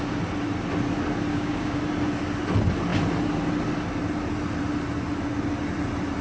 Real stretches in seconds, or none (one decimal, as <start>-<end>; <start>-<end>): 0.0-1.3; 1.8-6.2